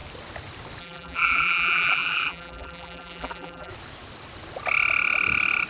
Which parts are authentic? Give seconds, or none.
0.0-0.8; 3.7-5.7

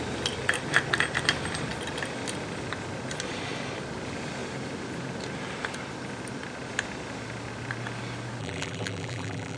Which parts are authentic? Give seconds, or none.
0.0-8.4

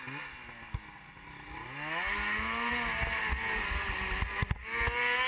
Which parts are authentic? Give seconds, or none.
0.0-5.3

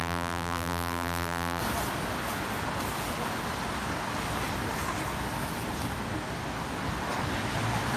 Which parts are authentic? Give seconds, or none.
1.6-8.0

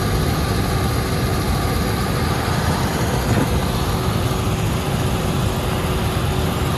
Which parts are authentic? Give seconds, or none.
0.0-6.8

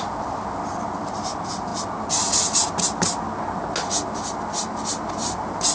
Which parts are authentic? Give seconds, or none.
1.7-5.1

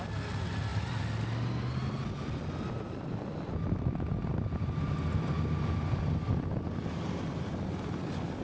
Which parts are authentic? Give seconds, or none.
0.0-8.4